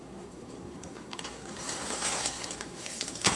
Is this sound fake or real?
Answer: fake